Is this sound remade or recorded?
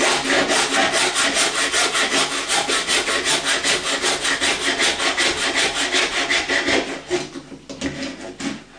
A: recorded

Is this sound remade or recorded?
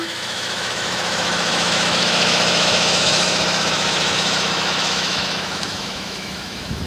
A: remade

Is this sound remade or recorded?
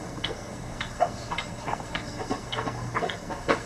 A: remade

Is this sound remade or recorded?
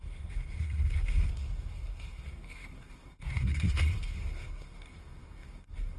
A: remade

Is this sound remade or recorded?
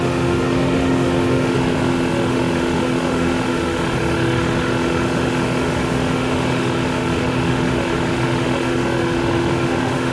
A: remade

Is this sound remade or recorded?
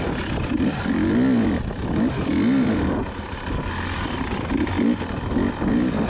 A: recorded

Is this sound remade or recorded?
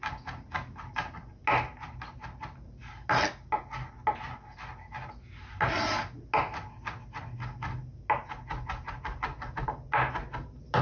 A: recorded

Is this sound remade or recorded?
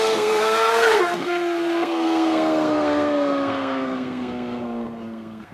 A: remade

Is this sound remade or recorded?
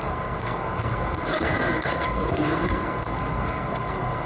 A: remade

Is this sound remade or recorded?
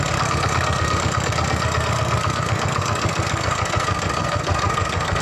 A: remade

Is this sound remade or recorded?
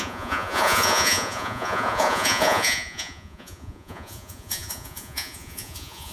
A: remade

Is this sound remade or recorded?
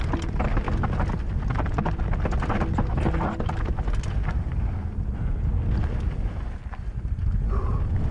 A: recorded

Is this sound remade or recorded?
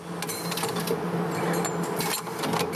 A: recorded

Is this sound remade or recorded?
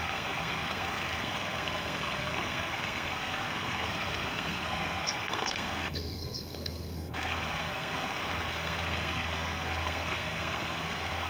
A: remade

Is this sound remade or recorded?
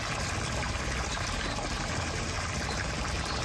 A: recorded